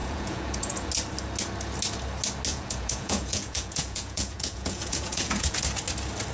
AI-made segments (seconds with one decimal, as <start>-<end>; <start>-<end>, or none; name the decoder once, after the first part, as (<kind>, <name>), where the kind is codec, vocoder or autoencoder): 0.0-0.9 (vocoder, Vocos); 2.5-5.6